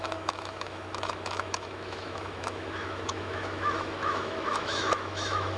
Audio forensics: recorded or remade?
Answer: remade